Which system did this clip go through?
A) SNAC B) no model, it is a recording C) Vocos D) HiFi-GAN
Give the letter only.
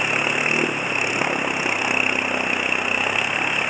B